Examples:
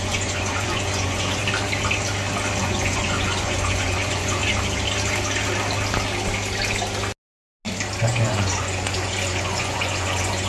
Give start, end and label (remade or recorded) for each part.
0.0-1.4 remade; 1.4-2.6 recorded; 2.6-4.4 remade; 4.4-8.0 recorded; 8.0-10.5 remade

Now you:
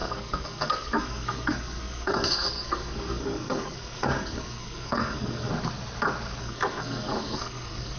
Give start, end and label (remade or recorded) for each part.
0.0-5.5 remade; 5.5-6.4 recorded; 6.4-8.0 remade